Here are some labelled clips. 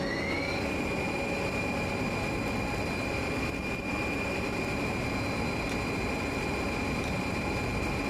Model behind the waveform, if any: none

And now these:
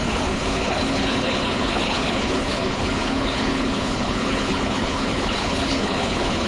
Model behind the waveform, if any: codec, HILCodec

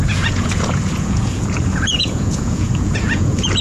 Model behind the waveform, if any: vocoder, Vocos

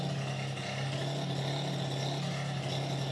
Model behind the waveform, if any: none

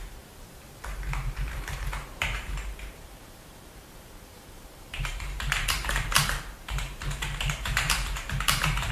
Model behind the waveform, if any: vocoder, BigVGAN v2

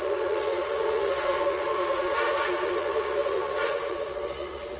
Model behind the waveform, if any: vocoder, Vocos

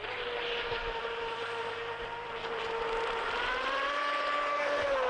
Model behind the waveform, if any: none